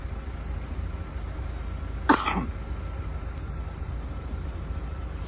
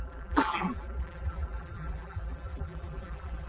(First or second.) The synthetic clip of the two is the second